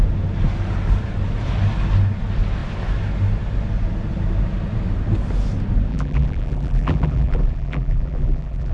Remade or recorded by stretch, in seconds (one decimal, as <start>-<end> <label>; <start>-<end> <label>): 0.0-5.9 recorded; 5.9-8.7 remade